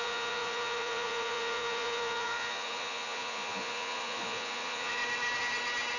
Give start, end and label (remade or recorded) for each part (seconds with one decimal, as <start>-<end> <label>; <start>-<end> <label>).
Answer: 0.0-5.0 remade; 5.0-6.0 recorded